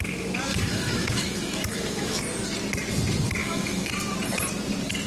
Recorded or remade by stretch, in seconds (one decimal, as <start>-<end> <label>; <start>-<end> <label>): 0.0-0.5 recorded; 0.5-2.2 remade; 2.2-3.4 recorded; 3.4-3.9 remade; 3.9-5.1 recorded